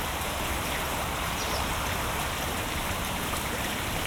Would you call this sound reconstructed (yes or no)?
yes